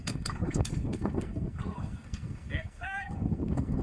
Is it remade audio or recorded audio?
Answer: remade